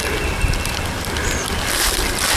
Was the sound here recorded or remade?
recorded